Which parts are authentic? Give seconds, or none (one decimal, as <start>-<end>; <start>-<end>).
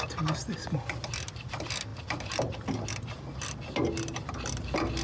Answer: 0.0-5.0